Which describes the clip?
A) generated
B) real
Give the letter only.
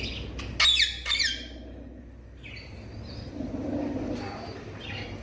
B